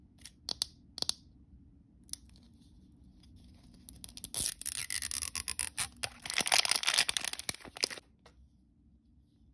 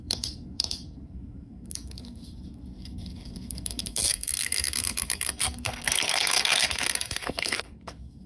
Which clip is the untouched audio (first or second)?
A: first